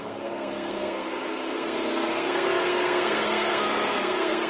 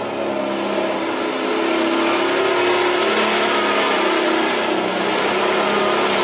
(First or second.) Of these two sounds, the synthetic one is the first